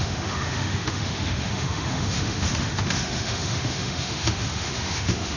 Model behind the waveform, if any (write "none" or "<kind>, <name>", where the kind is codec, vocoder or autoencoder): autoencoder, DAC-VAE